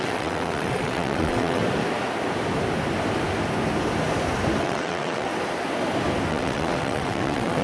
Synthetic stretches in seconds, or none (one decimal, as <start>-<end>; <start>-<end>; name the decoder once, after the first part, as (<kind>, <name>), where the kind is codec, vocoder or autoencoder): 0.0-1.6 (vocoder, WaveNeXt); 4.6-5.3; 6.3-7.6